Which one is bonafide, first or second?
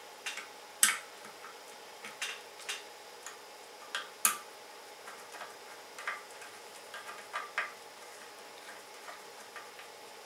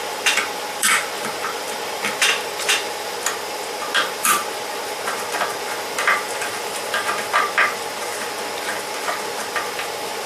first